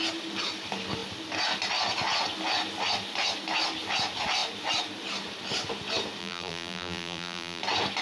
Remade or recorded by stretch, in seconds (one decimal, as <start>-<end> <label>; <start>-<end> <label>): 0.0-6.2 recorded; 6.2-7.6 remade; 7.6-8.0 recorded